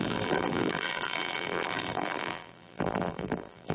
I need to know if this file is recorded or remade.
remade